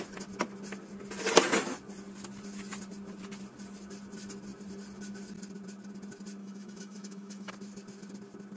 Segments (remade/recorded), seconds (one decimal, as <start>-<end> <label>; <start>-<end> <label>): 0.0-6.4 recorded; 6.4-7.5 remade; 7.5-8.6 recorded